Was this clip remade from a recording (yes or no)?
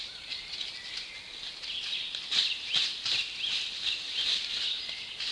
no